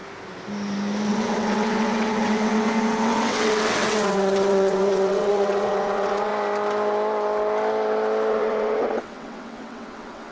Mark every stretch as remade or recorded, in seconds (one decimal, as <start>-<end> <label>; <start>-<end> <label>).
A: 0.0-1.1 recorded; 1.1-6.3 remade; 6.3-8.3 recorded; 8.3-10.3 remade